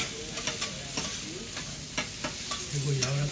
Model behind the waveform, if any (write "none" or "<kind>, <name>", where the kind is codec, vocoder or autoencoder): none